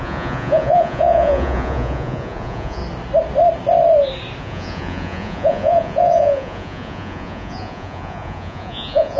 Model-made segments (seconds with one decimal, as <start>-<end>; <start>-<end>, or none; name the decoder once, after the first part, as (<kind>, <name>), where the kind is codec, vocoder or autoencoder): 0.0-2.8 (vocoder, Vocos); 4.4-9.2